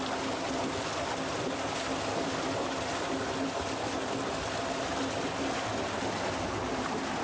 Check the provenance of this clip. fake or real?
real